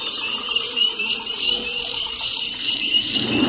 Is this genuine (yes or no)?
no